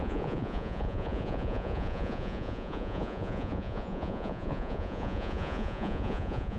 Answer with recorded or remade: remade